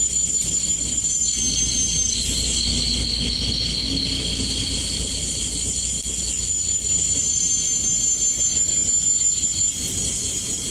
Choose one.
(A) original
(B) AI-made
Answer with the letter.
A